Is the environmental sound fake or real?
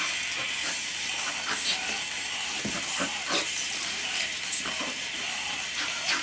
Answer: real